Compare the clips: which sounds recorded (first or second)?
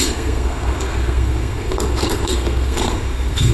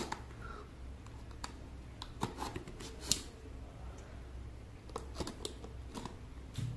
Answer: second